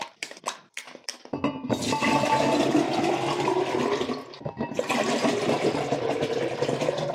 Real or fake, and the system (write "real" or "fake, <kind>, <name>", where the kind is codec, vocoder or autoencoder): real